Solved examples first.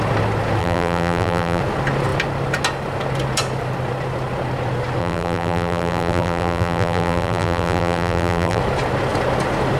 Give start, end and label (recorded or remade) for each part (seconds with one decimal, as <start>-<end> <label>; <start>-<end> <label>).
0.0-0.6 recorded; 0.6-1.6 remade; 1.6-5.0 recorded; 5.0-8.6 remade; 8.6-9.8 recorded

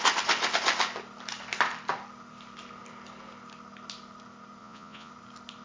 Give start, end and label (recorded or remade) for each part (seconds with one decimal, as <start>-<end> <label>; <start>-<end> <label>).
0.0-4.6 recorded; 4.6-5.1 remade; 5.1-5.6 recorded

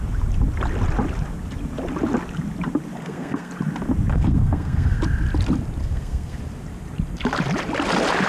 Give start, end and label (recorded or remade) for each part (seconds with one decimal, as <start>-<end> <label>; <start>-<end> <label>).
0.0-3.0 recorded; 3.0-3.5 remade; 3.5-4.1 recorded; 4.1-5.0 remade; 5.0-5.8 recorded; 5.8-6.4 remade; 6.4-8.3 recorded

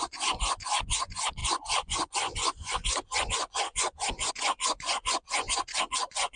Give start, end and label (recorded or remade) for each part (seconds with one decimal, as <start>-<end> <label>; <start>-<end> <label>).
0.0-6.4 remade

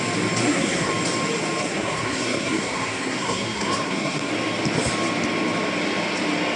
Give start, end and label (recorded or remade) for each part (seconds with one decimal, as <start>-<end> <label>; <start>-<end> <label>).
0.0-0.4 recorded; 0.4-0.9 remade; 0.9-1.6 recorded; 1.6-4.3 remade; 4.3-6.6 recorded

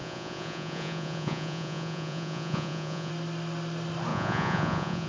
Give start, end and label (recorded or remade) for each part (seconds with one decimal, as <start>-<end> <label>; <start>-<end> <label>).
0.0-3.1 remade; 3.1-4.1 recorded; 4.1-5.1 remade

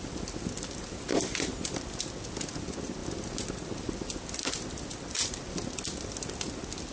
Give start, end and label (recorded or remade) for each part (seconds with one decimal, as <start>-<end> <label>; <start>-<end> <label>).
0.0-6.9 recorded